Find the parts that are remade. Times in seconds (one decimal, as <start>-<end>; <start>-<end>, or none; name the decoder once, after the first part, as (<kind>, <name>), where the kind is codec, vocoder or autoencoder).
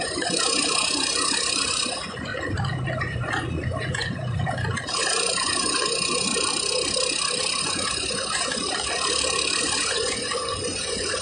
0.0-2.3 (vocoder, Vocos); 3.0-6.3; 7.6-8.5; 9.6-11.2